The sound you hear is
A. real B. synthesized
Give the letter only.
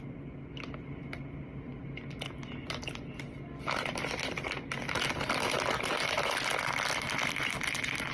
A